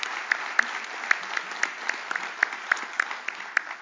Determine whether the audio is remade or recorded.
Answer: recorded